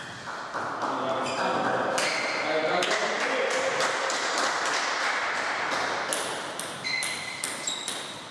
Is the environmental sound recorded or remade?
recorded